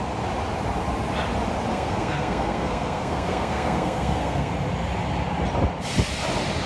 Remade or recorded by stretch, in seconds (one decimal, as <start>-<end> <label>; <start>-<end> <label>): 0.0-1.7 recorded; 1.7-4.5 remade; 4.5-6.7 recorded